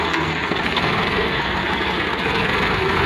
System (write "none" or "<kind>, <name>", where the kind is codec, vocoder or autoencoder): codec, SNAC